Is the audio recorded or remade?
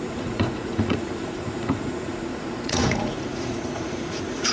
remade